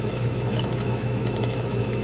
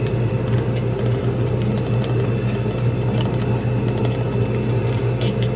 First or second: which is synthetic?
first